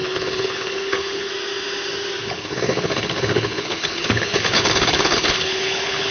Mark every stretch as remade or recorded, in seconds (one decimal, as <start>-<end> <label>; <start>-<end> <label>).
0.0-1.3 remade; 1.3-2.2 recorded; 2.2-6.1 remade